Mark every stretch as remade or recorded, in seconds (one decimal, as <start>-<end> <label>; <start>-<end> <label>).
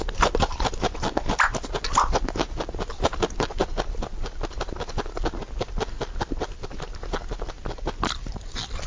0.0-8.9 recorded